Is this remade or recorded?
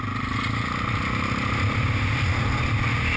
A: recorded